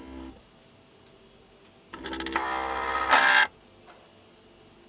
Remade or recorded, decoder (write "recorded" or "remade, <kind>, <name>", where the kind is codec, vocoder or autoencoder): recorded